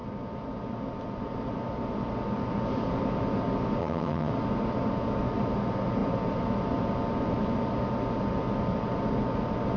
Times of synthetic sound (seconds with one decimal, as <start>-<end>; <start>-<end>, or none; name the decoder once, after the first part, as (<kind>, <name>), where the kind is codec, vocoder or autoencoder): 3.8-4.3 (vocoder, HiFi-GAN)